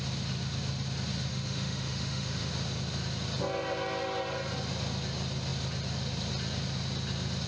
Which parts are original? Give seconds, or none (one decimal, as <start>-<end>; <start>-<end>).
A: 0.0-1.3; 2.5-7.5